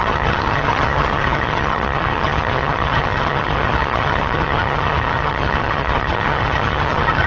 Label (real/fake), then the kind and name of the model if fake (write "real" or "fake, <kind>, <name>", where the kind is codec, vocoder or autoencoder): fake, vocoder, HiFi-GAN